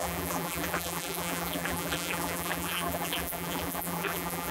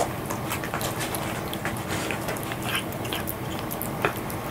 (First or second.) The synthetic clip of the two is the first